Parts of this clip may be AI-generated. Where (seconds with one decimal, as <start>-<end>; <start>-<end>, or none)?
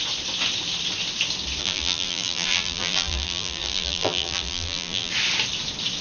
1.6-5.1